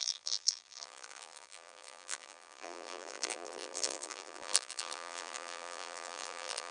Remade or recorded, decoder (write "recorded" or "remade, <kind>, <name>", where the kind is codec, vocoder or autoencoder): remade, vocoder, BigVGAN v2